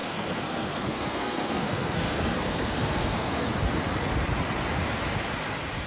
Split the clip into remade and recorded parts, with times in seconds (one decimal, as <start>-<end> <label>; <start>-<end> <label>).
0.0-3.5 remade; 3.5-5.9 recorded